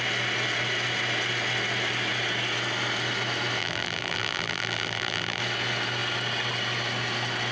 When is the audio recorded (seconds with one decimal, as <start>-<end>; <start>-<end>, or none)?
0.0-3.6; 5.4-7.5